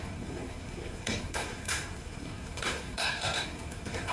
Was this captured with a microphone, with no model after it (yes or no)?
no